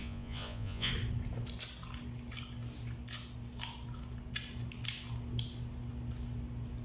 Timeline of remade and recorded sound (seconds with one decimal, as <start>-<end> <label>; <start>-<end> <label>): 0.0-0.9 remade; 0.9-6.8 recorded